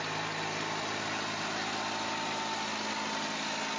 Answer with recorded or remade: recorded